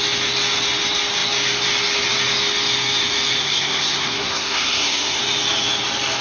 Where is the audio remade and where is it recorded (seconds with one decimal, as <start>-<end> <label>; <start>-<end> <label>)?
0.0-3.4 recorded; 3.4-5.2 remade; 5.2-6.2 recorded